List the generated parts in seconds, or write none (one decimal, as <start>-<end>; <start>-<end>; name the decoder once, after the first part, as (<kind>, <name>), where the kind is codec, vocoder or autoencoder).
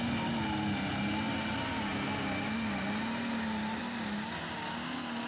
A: none